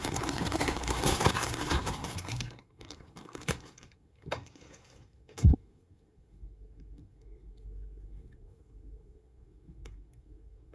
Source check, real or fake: fake